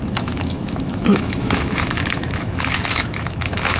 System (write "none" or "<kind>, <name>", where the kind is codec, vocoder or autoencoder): autoencoder, DAC-VAE